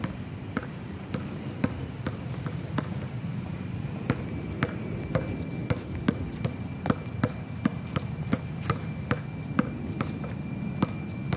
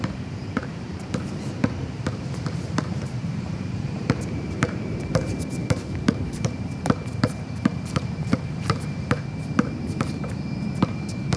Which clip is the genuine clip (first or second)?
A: first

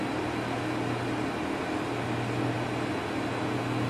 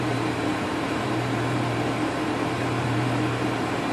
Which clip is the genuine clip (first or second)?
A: first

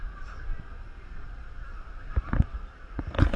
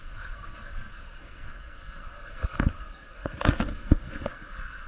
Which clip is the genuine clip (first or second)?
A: first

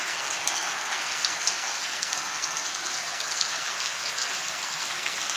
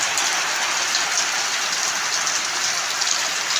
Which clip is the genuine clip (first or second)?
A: second